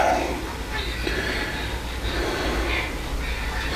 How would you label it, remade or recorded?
recorded